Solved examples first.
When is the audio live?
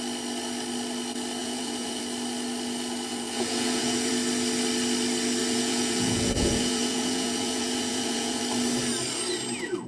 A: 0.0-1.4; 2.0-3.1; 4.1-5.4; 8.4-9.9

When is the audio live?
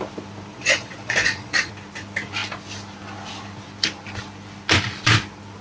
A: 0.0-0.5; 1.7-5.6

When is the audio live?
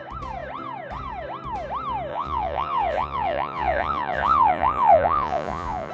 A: 0.0-2.1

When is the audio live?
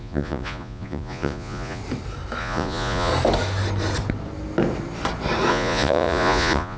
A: 1.8-2.4; 3.1-5.5